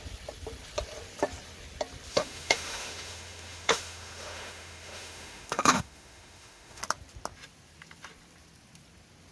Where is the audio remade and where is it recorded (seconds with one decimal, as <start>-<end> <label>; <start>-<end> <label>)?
0.0-2.1 recorded; 2.1-6.8 remade; 6.8-9.3 recorded